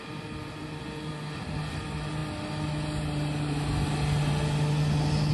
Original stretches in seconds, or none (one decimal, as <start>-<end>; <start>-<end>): 0.0-5.3